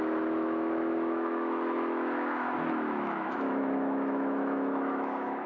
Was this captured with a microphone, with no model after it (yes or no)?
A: no